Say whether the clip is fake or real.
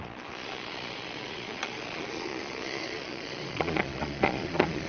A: fake